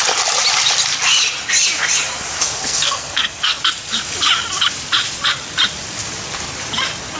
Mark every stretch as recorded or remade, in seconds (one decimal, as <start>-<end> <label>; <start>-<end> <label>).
0.0-2.6 recorded; 2.6-3.6 remade; 3.6-7.2 recorded